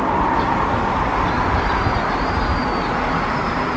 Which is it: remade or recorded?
recorded